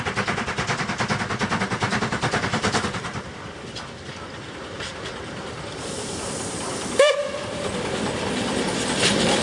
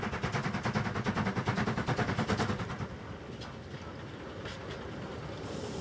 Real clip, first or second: second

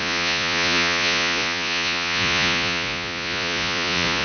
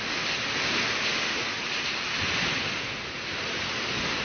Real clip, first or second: second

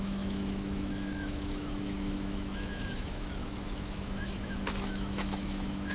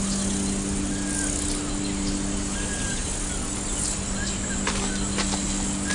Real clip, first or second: second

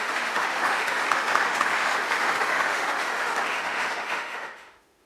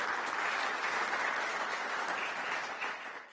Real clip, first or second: second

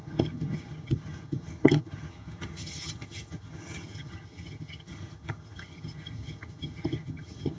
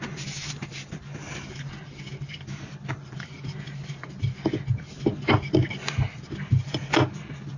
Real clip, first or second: second